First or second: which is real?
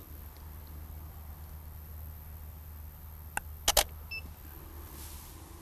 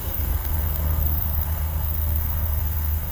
first